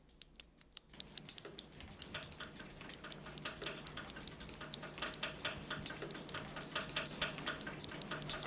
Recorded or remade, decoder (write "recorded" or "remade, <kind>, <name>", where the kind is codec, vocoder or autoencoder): recorded